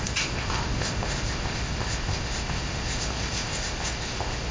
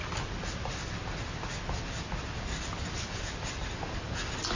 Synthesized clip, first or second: first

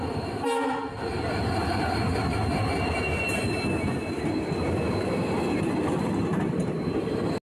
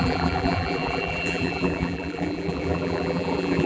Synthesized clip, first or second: second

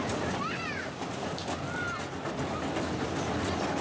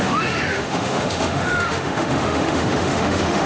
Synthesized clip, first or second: second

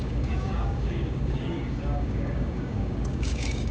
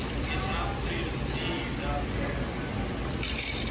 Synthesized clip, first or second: first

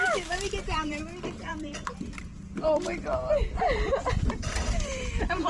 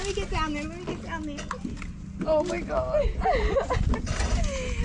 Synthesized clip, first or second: first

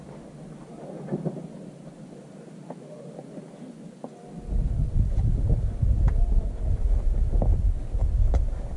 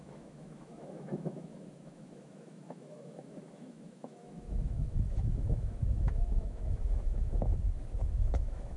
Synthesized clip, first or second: second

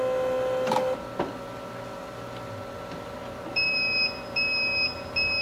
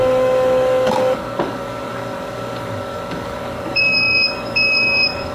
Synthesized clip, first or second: second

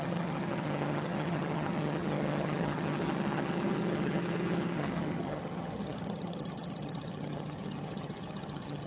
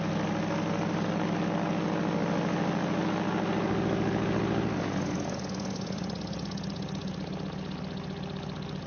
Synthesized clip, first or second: first